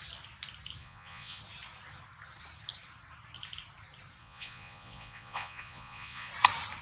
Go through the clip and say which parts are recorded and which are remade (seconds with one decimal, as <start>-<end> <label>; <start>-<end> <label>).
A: 0.0-0.8 recorded; 0.8-1.4 remade; 1.4-4.2 recorded; 4.2-6.3 remade; 6.3-6.8 recorded